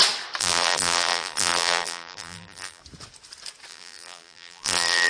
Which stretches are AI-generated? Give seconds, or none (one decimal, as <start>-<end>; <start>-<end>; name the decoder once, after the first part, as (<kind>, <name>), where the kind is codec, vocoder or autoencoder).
0.4-2.8 (vocoder, BigVGAN v2); 3.7-5.1

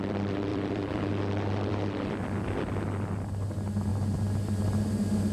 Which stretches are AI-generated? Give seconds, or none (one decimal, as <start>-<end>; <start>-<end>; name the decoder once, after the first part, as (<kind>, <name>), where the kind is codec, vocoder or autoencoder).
0.5-1.1 (vocoder, BigVGAN v2); 1.7-2.7; 3.9-4.5

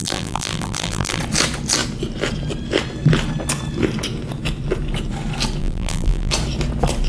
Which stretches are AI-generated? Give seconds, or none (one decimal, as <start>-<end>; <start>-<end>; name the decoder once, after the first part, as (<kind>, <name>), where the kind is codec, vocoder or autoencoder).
0.0-1.2 (vocoder, BigVGAN v2); 5.6-6.3

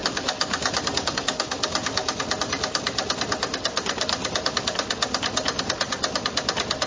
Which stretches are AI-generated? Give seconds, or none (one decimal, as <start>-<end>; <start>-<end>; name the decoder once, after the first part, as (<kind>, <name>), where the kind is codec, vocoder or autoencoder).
none

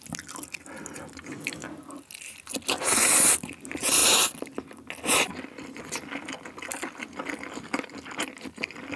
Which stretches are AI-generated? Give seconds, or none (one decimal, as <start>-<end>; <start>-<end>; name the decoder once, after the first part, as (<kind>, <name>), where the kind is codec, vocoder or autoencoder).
none